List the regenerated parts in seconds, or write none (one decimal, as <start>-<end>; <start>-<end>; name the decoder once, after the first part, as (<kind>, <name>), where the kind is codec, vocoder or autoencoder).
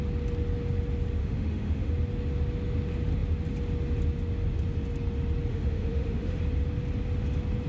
1.2-1.9 (autoencoder, DAC-VAE); 5.5-6.4